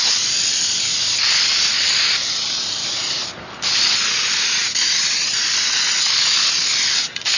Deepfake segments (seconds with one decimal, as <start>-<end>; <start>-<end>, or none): 0.9-1.7